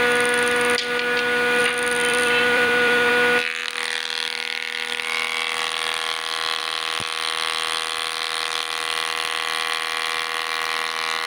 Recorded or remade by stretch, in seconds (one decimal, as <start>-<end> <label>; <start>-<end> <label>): 0.0-1.6 recorded; 1.6-3.1 remade; 3.1-11.3 recorded